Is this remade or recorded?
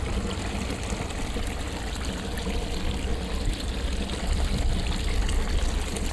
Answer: recorded